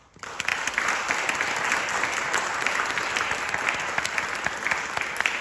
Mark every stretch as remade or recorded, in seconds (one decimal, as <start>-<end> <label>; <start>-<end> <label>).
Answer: 0.0-5.4 recorded